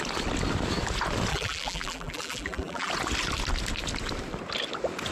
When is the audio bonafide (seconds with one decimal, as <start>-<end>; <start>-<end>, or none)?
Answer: 0.0-1.3; 2.9-5.1